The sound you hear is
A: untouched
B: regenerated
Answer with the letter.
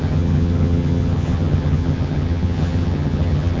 B